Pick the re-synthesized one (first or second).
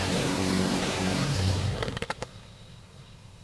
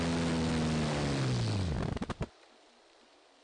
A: first